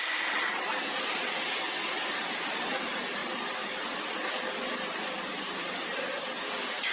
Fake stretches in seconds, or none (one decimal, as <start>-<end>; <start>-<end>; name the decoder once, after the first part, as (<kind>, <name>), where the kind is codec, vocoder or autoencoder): none